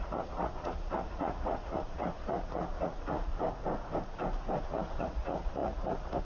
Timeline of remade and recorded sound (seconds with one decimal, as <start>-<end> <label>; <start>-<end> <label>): 0.0-3.3 remade; 3.3-4.6 recorded; 4.6-6.2 remade